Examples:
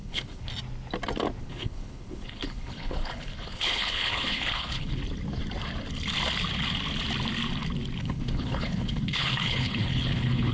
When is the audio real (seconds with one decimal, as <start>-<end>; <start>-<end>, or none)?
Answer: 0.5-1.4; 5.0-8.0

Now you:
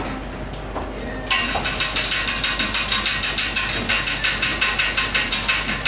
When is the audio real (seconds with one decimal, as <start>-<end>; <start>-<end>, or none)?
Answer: 0.0-5.9

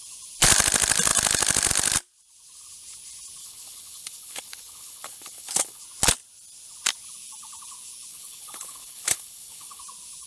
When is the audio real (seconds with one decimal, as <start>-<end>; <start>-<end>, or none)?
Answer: 0.0-3.4; 5.8-8.1; 9.8-10.3